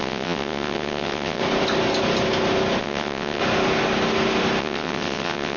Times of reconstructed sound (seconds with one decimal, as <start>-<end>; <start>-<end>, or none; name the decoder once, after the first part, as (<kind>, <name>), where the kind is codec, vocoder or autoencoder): 0.0-1.4 (vocoder, WaveNeXt); 2.8-3.4; 4.6-5.6